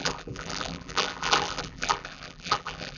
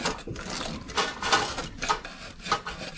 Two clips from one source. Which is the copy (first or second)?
first